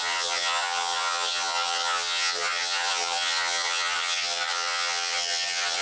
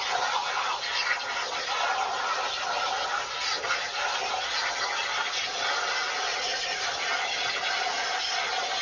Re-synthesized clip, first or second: first